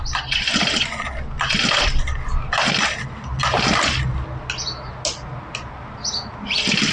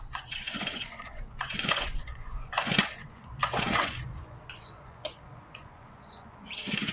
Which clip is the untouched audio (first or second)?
first